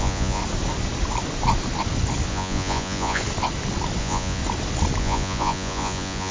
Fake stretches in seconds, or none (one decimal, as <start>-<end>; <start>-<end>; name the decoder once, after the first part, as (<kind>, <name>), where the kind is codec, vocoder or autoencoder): 0.0-0.4 (vocoder, Vocos); 2.3-3.2; 4.0-4.4; 5.0-6.3